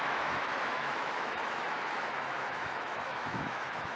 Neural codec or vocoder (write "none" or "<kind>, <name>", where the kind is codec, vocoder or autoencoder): autoencoder, DAC-VAE